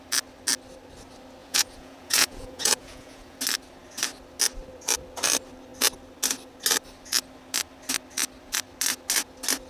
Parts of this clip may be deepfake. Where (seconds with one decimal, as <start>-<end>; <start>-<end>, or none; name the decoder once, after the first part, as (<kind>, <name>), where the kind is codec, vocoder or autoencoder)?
1.4-3.4 (vocoder, Vocos)

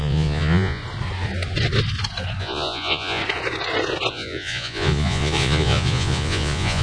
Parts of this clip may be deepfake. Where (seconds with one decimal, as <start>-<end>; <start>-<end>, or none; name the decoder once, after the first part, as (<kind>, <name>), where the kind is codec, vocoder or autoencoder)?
0.0-0.8 (vocoder, Vocos); 2.4-3.2; 4.1-6.8

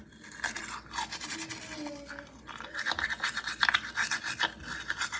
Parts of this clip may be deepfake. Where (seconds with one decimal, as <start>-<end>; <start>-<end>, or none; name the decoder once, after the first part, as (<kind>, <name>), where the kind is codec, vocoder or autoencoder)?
none

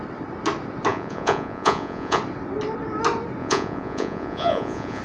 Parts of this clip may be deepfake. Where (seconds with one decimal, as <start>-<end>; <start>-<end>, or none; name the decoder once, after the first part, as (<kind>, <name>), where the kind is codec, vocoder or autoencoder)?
0.9-2.2 (vocoder, Vocos); 3.4-5.0

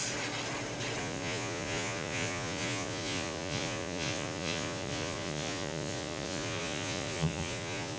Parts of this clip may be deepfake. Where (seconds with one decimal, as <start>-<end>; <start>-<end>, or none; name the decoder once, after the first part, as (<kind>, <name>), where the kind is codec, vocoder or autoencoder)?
1.0-8.0 (vocoder, Vocos)

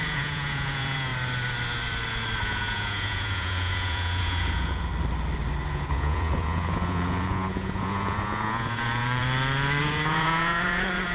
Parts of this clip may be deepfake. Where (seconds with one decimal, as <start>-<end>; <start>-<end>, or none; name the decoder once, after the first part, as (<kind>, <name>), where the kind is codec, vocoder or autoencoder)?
0.0-1.1 (vocoder, Vocos); 2.4-4.9; 5.7-9.2; 9.8-11.1

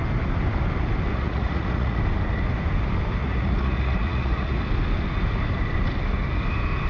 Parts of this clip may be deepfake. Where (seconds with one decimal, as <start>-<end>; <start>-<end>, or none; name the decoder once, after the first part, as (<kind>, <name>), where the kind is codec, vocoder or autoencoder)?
1.1-2.0 (vocoder, Vocos); 3.2-4.6

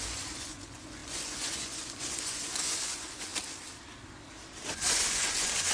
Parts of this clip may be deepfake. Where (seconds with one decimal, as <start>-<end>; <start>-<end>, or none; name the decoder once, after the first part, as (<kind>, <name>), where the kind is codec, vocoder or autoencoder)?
0.0-3.3 (vocoder, Vocos); 4.7-5.7